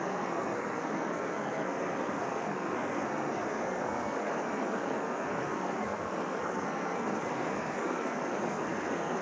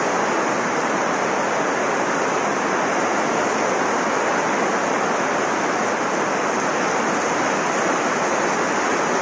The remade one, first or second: first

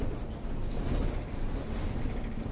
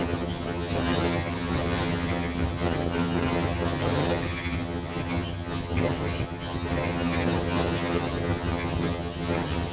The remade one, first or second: second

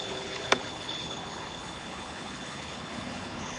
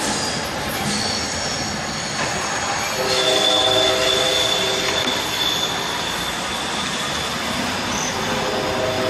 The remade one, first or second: first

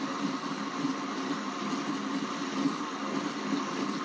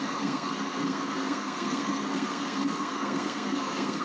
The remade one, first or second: second